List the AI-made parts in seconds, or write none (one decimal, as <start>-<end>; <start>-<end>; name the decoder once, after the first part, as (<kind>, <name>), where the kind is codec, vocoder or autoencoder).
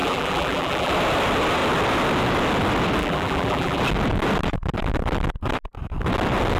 0.0-0.9 (vocoder, BigVGAN v2); 3.0-3.8